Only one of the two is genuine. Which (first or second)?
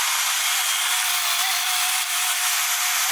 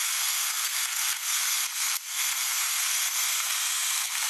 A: first